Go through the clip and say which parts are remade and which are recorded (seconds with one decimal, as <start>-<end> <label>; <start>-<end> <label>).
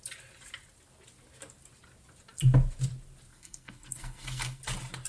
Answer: 0.0-3.3 recorded; 3.3-4.6 remade; 4.6-5.1 recorded